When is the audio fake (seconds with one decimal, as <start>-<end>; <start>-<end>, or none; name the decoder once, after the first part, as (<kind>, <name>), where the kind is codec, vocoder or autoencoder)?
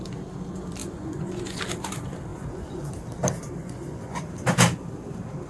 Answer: 0.8-1.6 (vocoder, Vocos); 2.3-2.9; 3.6-4.2